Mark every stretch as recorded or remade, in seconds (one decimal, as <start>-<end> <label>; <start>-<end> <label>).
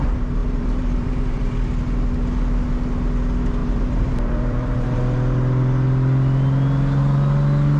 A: 0.0-0.4 recorded; 0.4-1.4 remade; 1.4-3.6 recorded; 3.6-5.0 remade; 5.0-7.8 recorded